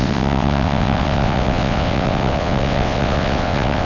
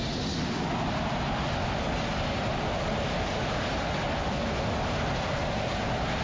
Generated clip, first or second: first